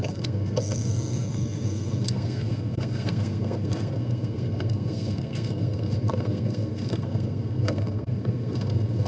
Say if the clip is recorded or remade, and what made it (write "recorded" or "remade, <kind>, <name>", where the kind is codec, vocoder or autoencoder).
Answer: remade, codec, SNAC